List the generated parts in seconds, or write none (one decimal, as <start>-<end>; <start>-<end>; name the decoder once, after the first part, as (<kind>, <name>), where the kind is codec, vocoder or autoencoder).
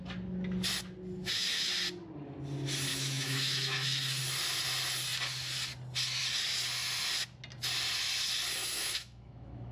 1.2-1.7 (autoencoder, DAC-VAE); 2.9-4.2; 8.6-9.7